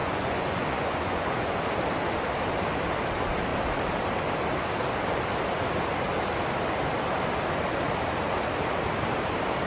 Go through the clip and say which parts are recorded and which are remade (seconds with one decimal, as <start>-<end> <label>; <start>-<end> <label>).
0.0-1.6 remade; 1.6-9.7 recorded